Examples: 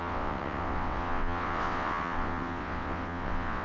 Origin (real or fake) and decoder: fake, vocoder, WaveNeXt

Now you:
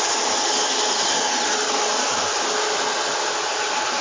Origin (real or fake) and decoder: real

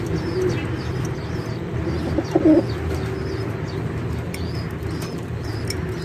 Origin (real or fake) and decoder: real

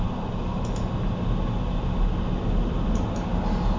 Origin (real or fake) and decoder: real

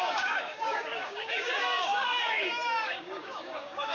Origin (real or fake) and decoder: fake, codec, DAC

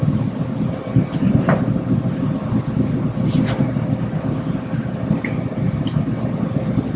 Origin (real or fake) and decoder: real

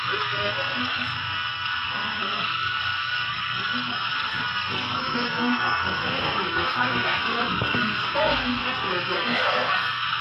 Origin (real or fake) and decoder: fake, codec, SNAC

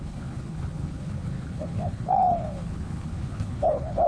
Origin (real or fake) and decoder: fake, codec, HILCodec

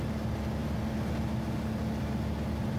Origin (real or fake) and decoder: real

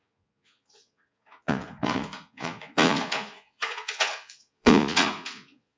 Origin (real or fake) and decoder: fake, vocoder, Vocos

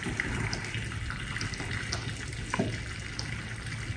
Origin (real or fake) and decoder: real